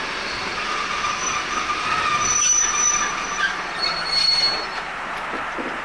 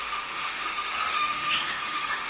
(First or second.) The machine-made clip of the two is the second